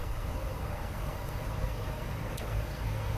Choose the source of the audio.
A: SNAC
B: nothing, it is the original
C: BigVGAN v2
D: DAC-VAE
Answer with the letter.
A